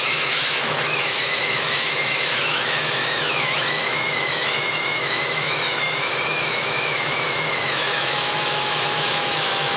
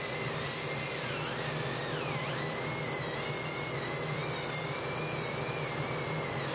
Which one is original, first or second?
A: second